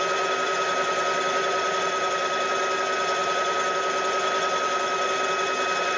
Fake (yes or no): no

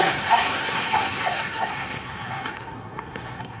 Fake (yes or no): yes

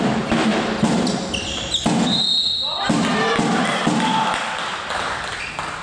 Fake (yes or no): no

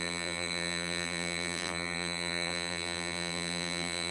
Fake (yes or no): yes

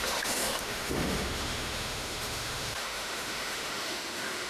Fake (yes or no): yes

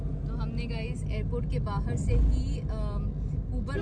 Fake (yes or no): no